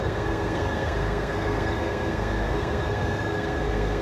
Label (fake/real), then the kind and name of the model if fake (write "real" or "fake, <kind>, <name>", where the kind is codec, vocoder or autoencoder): fake, codec, SNAC